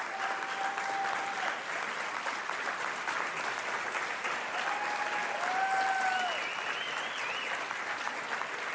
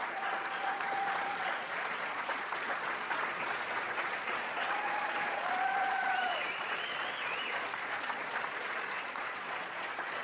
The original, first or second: first